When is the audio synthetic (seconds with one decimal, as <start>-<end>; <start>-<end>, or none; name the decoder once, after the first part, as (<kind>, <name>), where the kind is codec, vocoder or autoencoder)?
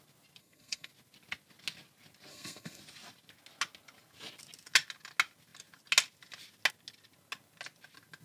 0.4-0.9 (codec, SNAC); 2.3-2.8